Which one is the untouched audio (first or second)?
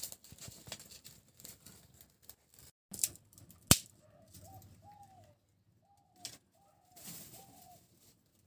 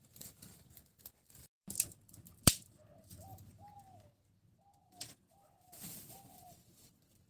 first